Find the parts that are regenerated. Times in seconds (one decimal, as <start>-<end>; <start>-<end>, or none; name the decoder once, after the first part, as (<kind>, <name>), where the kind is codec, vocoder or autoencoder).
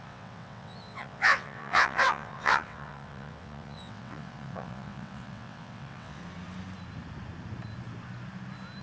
0.0-6.2 (vocoder, WaveNeXt)